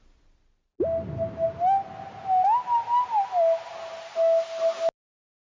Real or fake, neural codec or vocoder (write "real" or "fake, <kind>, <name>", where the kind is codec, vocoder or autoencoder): real